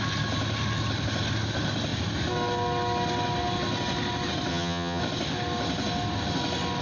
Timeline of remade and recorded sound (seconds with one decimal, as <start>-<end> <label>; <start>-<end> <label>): 0.0-4.5 recorded; 4.5-5.0 remade; 5.0-6.8 recorded